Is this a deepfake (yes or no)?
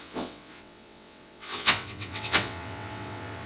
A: yes